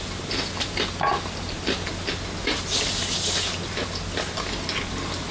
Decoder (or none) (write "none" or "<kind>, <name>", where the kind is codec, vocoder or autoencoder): none